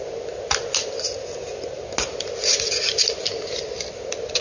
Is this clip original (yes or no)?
yes